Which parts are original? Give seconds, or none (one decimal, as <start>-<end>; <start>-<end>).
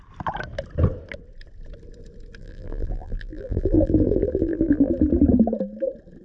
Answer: 0.0-2.4; 4.9-6.2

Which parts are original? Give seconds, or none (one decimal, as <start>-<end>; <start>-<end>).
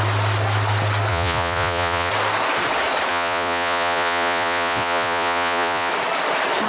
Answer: 0.0-1.1; 2.1-3.1; 5.9-6.7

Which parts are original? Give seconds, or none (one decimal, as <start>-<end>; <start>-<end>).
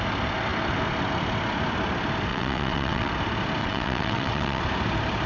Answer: 0.0-2.3; 3.1-3.6; 4.6-5.3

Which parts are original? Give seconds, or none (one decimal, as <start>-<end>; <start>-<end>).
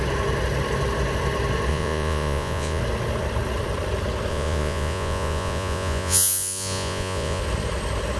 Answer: 0.0-1.7; 2.8-4.3; 7.4-8.2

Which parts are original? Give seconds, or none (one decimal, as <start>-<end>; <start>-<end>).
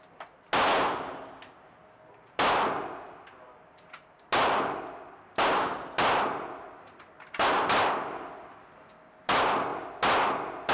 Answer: 0.0-10.7